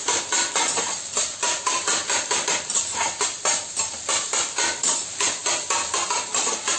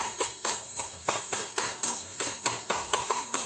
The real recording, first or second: first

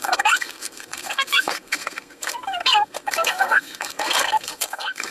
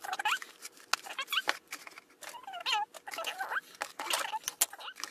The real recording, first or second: second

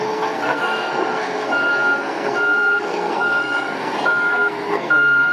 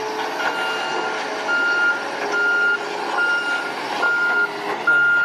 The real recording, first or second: second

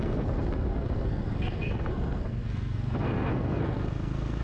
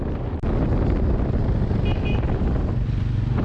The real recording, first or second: second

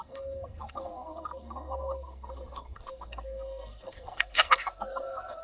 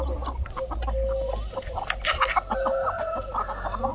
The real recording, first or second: second